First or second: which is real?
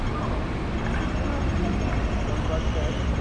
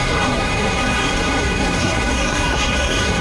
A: first